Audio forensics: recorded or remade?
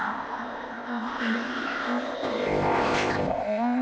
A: remade